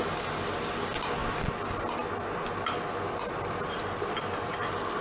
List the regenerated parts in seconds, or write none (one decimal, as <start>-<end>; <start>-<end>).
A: none